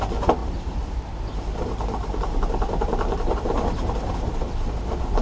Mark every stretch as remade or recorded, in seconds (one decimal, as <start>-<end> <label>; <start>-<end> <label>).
0.0-0.4 recorded; 0.4-1.4 remade; 1.4-2.0 recorded; 2.0-4.4 remade; 4.4-5.2 recorded